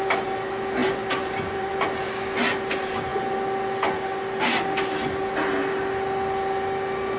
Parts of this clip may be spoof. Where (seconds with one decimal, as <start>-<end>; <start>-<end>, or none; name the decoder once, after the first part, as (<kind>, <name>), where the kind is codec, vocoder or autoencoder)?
0.8-1.7 (vocoder, BigVGAN v2)

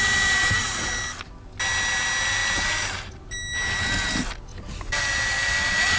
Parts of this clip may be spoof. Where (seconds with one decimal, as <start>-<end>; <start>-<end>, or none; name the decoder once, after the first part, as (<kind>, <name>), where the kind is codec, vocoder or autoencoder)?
4.5-5.0 (vocoder, BigVGAN v2)

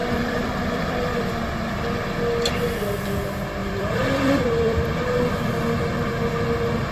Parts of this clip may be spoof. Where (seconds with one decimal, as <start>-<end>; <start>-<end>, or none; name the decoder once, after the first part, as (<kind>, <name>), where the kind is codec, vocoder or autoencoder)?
0.0-1.3 (vocoder, BigVGAN v2); 3.6-5.2